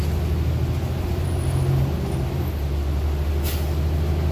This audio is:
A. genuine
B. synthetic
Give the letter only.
A